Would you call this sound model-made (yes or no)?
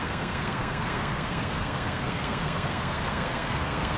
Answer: yes